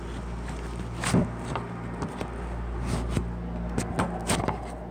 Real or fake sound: real